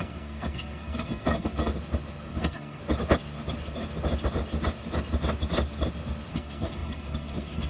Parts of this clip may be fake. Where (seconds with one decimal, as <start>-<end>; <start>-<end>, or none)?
0.0-1.7; 2.3-2.8; 6.3-7.7